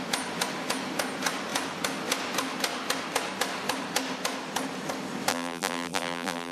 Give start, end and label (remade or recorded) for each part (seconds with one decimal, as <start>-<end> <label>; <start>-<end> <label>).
0.0-5.3 recorded; 5.3-6.5 remade